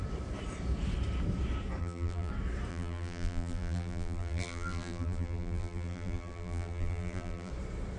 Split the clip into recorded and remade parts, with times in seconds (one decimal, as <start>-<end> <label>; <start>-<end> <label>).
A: 0.0-1.8 recorded; 1.8-2.3 remade; 2.3-2.7 recorded; 2.7-7.5 remade; 7.5-8.0 recorded